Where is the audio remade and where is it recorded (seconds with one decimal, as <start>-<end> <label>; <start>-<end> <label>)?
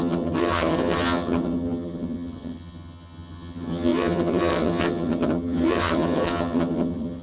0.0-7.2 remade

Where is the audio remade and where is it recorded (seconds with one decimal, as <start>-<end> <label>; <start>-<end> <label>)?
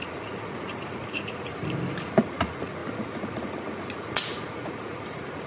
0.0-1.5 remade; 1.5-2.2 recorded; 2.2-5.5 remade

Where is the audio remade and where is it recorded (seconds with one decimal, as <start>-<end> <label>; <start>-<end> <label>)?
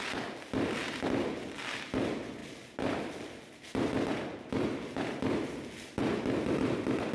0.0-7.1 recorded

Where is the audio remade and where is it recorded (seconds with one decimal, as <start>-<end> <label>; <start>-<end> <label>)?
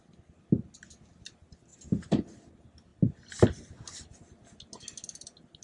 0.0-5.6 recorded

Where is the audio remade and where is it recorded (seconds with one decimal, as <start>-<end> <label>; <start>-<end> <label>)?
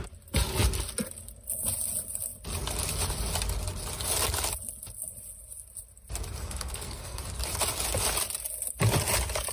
0.0-6.4 recorded; 6.4-7.2 remade; 7.2-9.5 recorded